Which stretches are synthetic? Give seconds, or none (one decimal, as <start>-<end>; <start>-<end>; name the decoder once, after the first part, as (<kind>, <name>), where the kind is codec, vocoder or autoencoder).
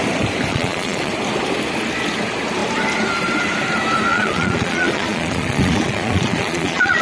0.5-1.1 (vocoder, Vocos); 4.1-7.0